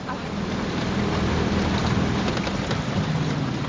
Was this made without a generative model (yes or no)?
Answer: yes